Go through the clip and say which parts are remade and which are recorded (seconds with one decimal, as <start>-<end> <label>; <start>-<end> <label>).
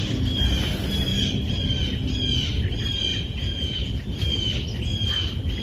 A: 0.0-3.1 recorded; 3.1-4.0 remade; 4.0-5.6 recorded